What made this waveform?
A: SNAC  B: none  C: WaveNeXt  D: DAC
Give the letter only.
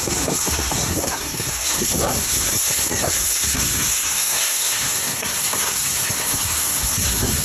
A